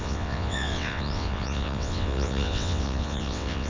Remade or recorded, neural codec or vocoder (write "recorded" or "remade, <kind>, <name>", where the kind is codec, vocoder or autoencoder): remade, vocoder, WaveNeXt